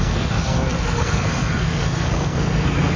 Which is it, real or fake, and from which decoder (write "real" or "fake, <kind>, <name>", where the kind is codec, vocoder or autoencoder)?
fake, codec, SNAC